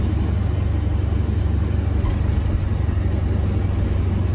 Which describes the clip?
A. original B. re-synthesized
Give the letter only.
A